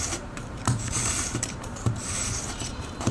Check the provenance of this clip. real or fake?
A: fake